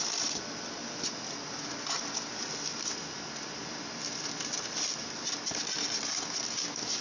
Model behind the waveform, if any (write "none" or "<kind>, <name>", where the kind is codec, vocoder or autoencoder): none